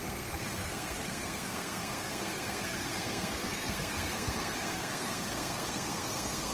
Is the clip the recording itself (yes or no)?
no